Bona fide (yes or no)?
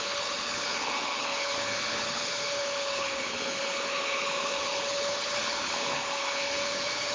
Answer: no